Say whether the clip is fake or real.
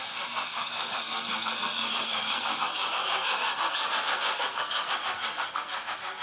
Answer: fake